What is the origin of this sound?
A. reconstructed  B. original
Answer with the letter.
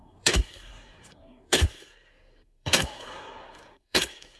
A